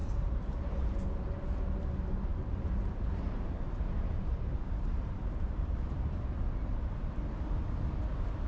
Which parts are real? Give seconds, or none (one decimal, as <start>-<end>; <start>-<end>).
0.0-2.3; 6.9-8.5